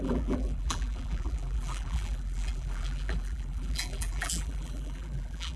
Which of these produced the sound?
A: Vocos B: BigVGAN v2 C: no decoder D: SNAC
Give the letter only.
B